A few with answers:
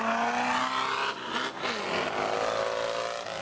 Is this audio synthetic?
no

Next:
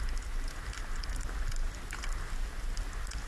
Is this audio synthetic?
no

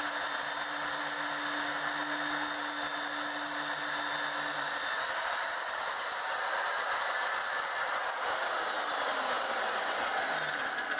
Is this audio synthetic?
no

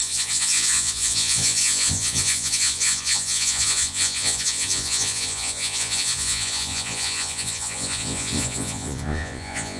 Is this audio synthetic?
yes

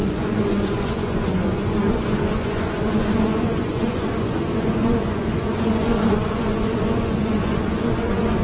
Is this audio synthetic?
yes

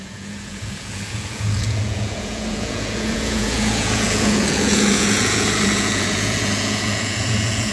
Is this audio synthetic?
yes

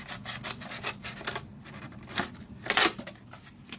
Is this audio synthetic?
no